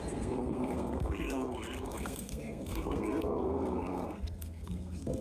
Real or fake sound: fake